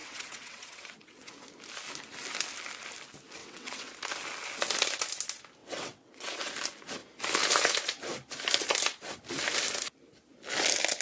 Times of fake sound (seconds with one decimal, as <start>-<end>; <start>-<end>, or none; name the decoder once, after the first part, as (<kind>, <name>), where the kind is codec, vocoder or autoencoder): 0.0-1.3 (vocoder, WaveNeXt); 3.4-4.0; 5.6-6.5